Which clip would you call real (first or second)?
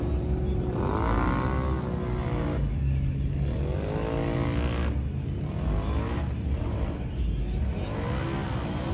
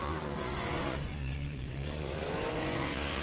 first